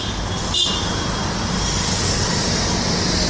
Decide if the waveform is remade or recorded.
recorded